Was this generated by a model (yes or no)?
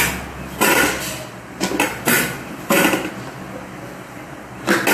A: no